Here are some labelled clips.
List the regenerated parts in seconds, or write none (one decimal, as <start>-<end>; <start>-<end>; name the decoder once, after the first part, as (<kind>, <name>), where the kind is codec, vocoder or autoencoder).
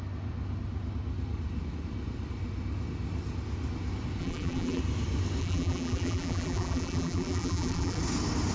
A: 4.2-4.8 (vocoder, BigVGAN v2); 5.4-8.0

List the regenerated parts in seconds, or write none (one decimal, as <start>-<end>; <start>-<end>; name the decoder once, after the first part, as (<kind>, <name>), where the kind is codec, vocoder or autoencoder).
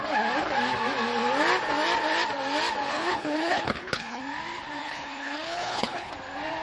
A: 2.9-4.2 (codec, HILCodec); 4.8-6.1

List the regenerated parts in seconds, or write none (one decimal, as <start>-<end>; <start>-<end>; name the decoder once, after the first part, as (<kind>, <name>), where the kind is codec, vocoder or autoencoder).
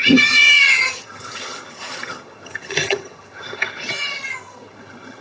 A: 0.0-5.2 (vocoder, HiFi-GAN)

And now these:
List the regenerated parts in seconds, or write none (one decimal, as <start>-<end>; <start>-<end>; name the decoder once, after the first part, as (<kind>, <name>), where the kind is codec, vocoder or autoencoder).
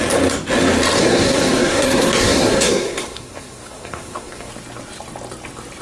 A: 1.0-4.5 (codec, SNAC)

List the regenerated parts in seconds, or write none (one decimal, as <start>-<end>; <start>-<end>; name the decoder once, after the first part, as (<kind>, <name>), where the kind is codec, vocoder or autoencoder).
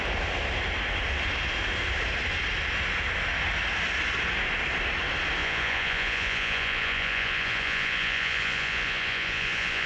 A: 5.4-9.9 (vocoder, Vocos)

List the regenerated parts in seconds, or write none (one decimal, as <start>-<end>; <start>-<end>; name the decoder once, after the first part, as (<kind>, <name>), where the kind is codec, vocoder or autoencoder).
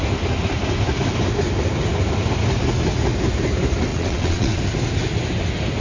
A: 3.9-4.6 (vocoder, WaveNeXt)